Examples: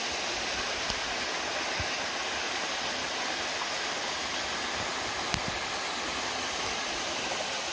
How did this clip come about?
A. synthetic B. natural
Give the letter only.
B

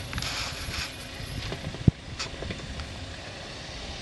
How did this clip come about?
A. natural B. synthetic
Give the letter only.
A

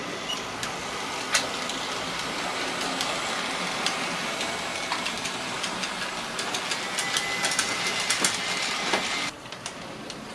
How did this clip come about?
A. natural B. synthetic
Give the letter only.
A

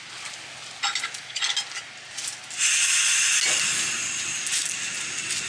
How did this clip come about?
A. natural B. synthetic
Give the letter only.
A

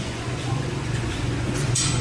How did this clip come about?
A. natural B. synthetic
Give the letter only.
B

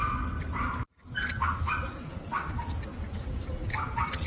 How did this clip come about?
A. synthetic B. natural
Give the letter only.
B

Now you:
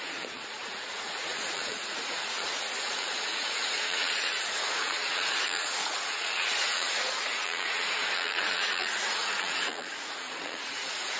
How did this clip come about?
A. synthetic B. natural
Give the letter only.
A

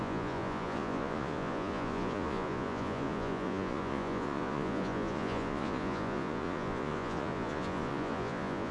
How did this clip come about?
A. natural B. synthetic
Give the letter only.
B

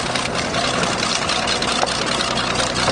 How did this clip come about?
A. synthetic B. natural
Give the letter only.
B